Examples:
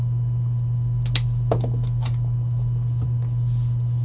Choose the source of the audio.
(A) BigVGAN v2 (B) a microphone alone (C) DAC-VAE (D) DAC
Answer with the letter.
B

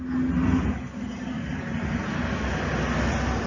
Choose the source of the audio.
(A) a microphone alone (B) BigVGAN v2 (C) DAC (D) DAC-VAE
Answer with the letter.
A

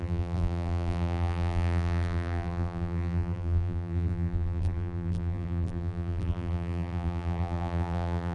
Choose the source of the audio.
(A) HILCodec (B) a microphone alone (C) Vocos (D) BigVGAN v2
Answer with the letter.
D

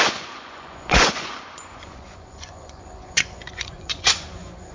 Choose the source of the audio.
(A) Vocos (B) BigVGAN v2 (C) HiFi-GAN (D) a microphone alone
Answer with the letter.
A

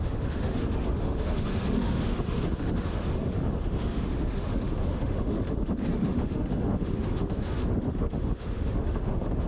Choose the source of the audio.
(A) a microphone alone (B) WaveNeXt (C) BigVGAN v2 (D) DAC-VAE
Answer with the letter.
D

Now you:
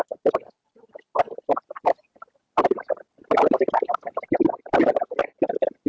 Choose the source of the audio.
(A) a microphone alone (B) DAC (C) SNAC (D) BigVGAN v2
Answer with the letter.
A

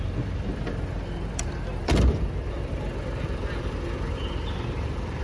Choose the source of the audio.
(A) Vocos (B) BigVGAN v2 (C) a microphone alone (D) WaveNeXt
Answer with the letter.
B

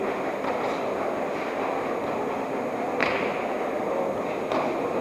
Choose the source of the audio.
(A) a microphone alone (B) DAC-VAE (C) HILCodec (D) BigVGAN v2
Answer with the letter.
A